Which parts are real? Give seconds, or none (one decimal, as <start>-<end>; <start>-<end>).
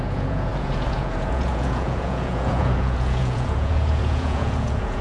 none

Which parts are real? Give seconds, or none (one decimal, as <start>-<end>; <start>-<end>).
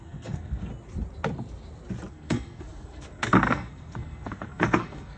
0.7-2.1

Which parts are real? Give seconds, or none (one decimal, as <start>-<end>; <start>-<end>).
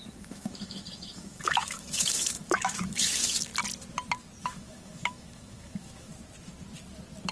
3.5-4.4; 6.1-7.3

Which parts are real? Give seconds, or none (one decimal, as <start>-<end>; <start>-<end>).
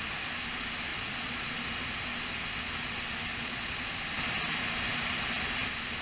0.0-0.9; 1.5-3.3; 3.9-6.0